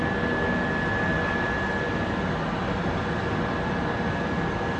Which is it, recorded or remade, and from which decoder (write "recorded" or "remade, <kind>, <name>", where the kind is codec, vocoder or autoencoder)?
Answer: recorded